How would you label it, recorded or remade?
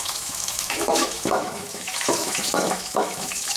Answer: remade